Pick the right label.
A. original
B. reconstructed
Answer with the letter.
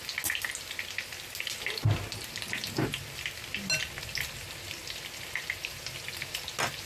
A